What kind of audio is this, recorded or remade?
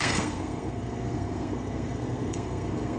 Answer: remade